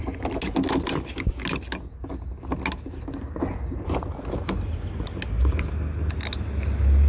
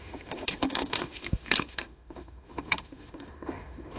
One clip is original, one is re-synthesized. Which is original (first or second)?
first